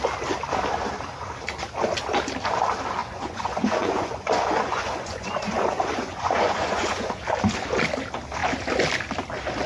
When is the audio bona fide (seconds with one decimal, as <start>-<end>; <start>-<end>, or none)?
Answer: 0.0-3.0; 7.2-9.7